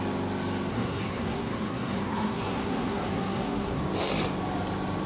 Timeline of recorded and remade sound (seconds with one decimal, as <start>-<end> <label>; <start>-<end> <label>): 0.0-0.7 recorded; 0.7-3.8 remade; 3.8-5.1 recorded

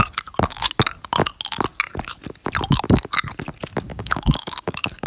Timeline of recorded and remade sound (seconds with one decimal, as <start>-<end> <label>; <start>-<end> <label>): 0.0-3.9 recorded; 3.9-5.1 remade

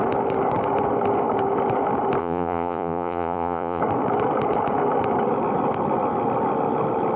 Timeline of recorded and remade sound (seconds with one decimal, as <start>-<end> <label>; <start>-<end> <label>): 0.0-2.2 recorded; 2.2-3.8 remade; 3.8-7.2 recorded

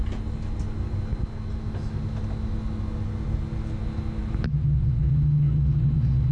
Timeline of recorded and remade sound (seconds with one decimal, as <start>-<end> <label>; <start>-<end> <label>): 0.0-4.2 recorded; 4.2-4.9 remade; 4.9-6.3 recorded

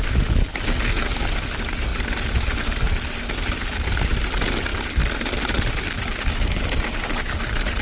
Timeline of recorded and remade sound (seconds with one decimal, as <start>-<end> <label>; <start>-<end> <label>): 0.0-0.5 remade; 0.5-1.2 recorded; 1.2-4.7 remade; 4.7-5.7 recorded; 5.7-7.8 remade